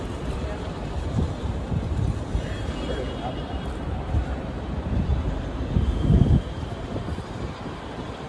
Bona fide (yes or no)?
no